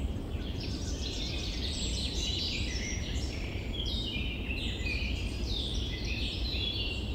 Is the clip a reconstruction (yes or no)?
yes